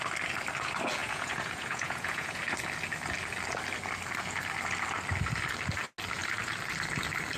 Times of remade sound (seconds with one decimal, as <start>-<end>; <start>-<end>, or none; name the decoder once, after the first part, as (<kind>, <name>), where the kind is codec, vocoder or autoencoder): 1.0-2.4 (vocoder, Vocos)